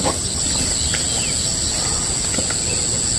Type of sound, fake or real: real